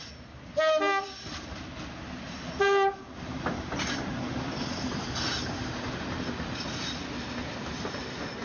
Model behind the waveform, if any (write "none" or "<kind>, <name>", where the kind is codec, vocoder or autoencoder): none